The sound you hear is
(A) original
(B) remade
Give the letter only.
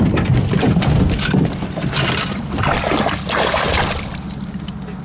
A